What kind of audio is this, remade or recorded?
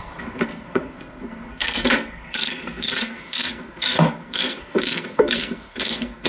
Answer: remade